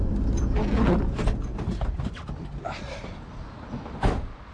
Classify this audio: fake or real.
real